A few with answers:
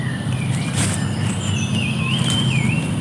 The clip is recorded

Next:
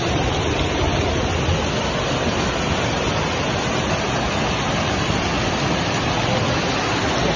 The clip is recorded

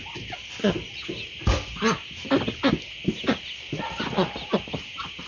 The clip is recorded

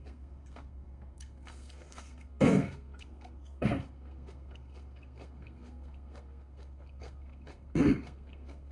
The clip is remade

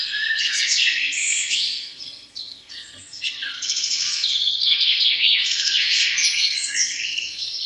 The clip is remade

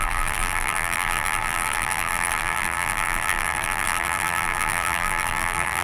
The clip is remade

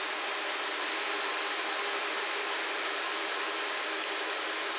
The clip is recorded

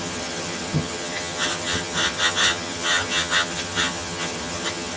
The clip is remade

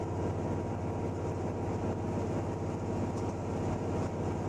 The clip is recorded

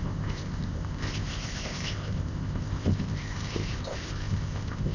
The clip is remade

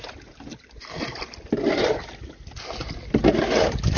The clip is recorded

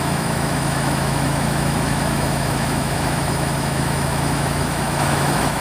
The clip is remade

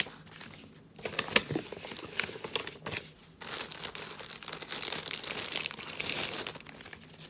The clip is recorded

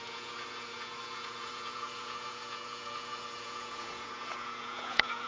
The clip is remade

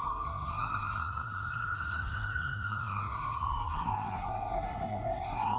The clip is remade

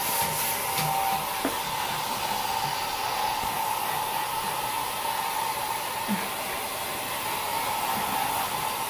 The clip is recorded